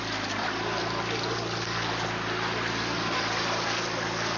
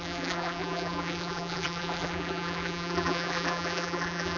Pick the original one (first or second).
first